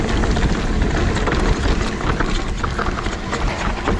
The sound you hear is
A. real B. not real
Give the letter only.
A